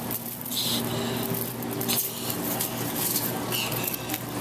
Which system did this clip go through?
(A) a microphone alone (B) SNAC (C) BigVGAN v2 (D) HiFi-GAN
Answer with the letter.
A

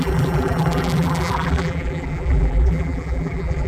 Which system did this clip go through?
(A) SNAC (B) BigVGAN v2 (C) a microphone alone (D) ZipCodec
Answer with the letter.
B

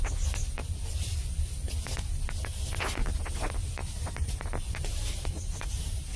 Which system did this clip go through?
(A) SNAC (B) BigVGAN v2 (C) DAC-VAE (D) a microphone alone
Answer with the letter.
D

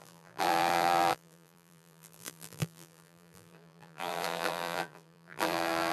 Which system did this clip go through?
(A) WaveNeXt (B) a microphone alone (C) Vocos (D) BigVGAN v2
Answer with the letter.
D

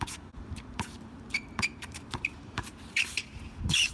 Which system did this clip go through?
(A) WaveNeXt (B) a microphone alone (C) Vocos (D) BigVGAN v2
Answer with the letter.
D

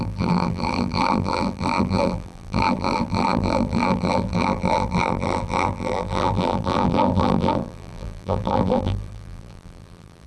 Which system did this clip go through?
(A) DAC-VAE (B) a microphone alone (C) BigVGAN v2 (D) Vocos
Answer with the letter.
C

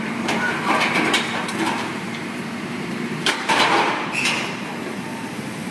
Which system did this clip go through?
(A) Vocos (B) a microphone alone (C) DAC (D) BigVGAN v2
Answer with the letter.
D